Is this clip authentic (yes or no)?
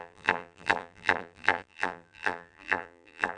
no